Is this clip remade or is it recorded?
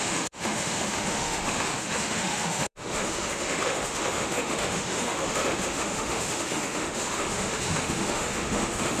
remade